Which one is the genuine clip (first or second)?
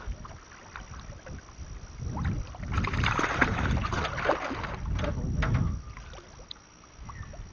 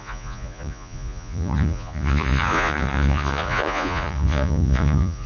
first